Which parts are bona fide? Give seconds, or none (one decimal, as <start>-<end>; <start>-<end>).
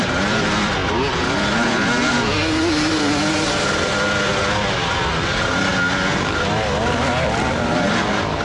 0.0-8.4